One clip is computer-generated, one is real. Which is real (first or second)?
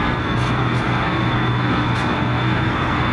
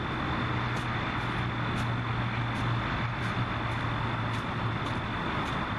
second